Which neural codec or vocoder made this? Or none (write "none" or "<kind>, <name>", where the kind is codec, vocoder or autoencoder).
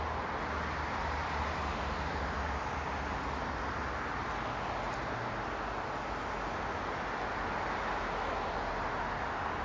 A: none